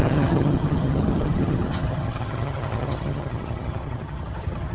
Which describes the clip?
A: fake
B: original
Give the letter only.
A